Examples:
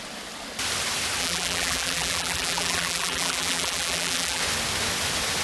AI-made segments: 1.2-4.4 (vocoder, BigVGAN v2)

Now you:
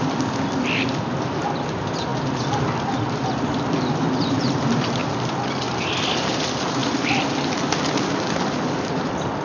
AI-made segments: none